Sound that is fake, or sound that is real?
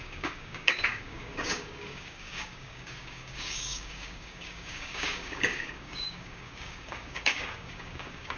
fake